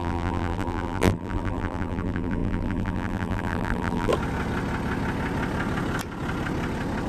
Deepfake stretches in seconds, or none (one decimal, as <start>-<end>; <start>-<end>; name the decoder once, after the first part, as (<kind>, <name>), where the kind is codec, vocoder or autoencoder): 0.0-4.1 (vocoder, BigVGAN v2)